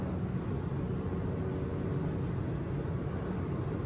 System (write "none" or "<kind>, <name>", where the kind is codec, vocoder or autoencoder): none